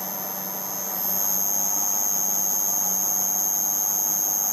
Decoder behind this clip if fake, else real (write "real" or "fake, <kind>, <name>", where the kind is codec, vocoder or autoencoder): real